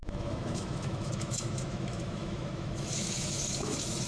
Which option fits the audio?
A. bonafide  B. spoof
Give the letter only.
B